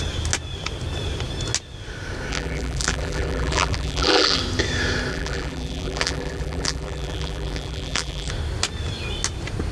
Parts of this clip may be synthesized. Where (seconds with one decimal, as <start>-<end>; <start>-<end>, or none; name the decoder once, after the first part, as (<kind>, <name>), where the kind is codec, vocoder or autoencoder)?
2.3-4.4 (vocoder, BigVGAN v2); 5.1-8.3